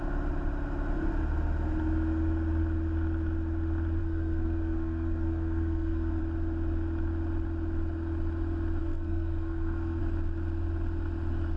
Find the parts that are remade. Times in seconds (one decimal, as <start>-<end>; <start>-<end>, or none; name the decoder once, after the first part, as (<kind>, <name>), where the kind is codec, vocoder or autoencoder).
4.0-6.2 (codec, SNAC); 8.8-10.0